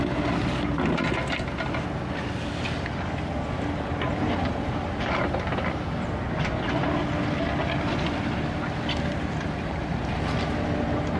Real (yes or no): yes